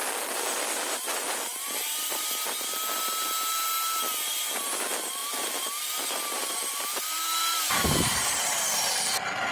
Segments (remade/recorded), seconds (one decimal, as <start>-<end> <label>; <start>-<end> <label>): 0.0-5.2 recorded; 5.2-8.9 remade; 8.9-9.5 recorded